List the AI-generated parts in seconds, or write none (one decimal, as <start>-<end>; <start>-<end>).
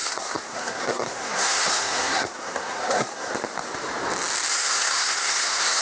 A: 0.0-3.3; 4.5-5.8